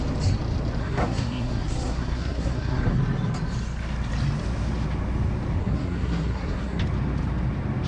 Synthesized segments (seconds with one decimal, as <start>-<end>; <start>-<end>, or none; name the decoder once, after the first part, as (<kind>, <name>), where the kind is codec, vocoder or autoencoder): 0.8-3.0 (codec, SNAC); 5.6-6.8